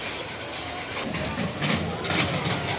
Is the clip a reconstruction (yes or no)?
no